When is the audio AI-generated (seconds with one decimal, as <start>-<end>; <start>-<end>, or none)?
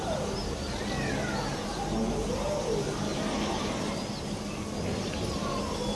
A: none